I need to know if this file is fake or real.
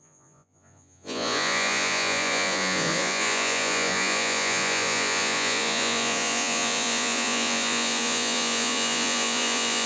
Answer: fake